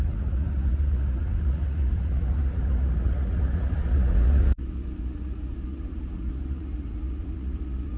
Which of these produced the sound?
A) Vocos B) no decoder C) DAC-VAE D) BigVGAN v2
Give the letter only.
A